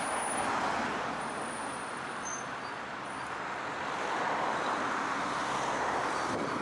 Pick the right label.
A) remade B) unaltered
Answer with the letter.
B